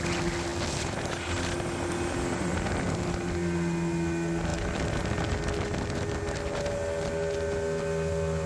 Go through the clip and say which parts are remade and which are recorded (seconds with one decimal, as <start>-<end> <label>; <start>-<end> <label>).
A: 0.0-8.5 recorded